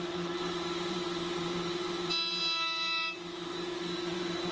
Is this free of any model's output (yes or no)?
no